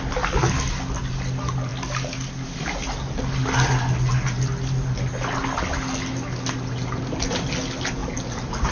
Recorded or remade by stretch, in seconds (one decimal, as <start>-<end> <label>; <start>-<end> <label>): 0.0-8.7 recorded